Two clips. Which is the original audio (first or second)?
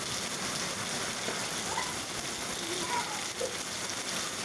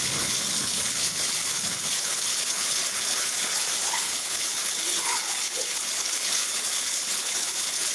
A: first